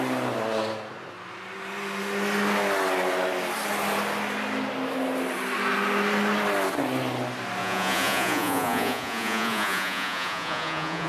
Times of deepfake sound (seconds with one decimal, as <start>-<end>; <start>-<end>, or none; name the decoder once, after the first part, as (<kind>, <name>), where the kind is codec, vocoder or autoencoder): 7.6-11.1 (vocoder, Vocos)